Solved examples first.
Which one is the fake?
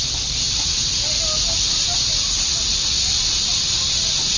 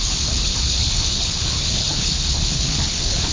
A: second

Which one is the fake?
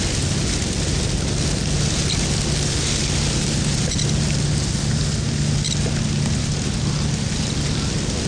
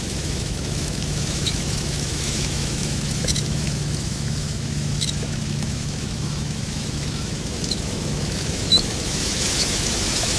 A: second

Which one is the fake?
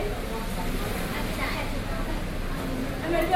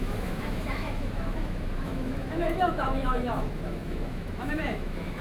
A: second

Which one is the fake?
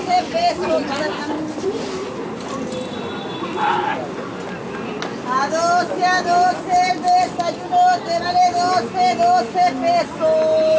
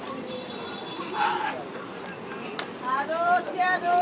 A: second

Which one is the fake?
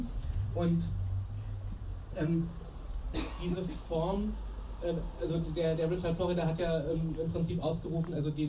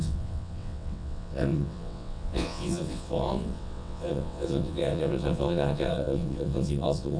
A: second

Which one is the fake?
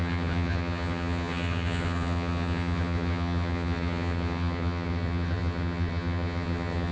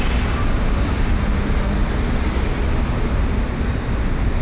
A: first